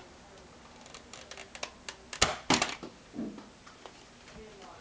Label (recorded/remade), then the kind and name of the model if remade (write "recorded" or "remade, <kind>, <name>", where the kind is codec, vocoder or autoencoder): recorded